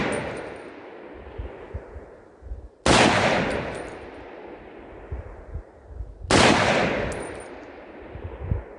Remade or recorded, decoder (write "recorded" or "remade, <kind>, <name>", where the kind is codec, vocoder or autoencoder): recorded